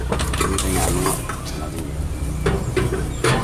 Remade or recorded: recorded